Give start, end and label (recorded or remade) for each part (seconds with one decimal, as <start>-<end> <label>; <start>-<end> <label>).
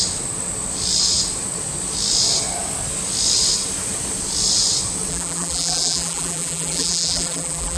0.0-5.1 recorded; 5.1-7.8 remade